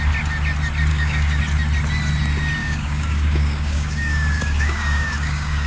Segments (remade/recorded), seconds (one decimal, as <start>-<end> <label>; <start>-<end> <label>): 0.0-0.9 recorded; 0.9-1.4 remade; 1.4-2.6 recorded; 2.6-5.7 remade